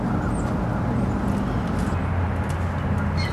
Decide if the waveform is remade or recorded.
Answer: recorded